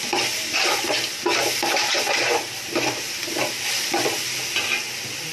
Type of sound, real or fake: real